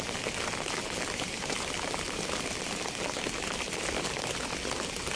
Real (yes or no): yes